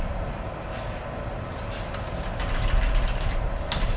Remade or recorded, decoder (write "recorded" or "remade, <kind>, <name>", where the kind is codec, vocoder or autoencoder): remade, vocoder, BigVGAN v2